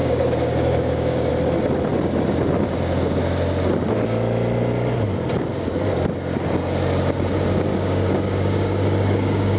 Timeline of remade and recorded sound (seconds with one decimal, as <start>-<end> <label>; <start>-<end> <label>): 0.0-1.3 remade; 1.3-7.7 recorded; 7.7-9.6 remade